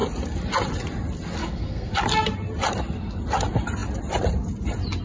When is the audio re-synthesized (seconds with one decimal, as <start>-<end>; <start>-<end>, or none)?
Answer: 1.4-1.9